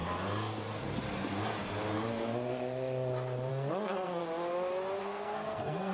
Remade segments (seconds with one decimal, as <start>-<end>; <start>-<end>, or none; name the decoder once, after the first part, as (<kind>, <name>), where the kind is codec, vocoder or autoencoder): 3.5-4.2 (codec, SNAC); 5.0-5.9